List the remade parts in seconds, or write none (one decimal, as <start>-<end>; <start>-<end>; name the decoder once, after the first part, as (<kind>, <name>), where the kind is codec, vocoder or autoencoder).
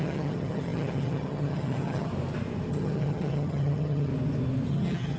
0.0-2.1 (vocoder, HiFi-GAN); 2.7-4.1; 4.7-5.2